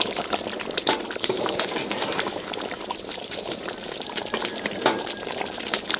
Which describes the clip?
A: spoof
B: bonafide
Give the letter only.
A